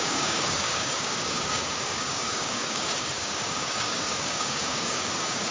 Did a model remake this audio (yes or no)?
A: yes